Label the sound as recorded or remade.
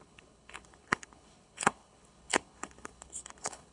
remade